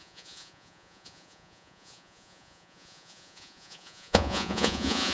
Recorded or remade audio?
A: remade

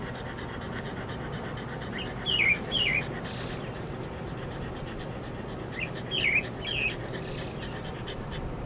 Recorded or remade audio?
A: recorded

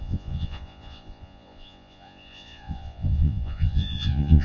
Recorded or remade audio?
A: remade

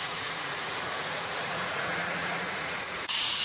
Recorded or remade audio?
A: remade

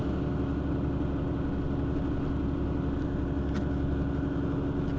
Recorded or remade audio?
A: recorded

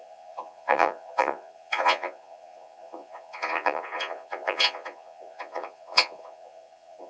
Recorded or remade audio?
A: remade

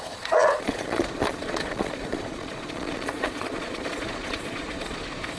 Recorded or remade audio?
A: remade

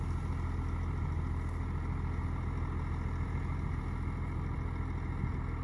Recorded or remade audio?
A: recorded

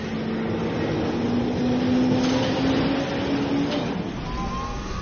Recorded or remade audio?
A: recorded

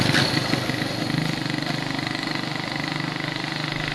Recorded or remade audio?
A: recorded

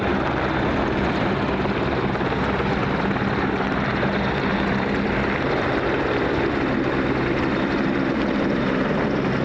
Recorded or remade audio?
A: recorded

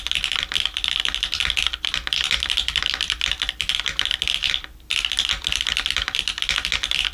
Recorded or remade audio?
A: recorded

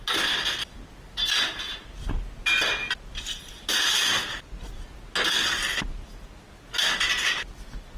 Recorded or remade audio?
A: recorded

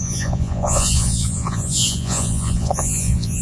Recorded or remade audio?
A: remade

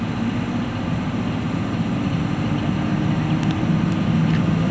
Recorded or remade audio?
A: recorded